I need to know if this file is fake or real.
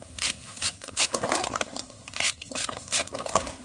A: fake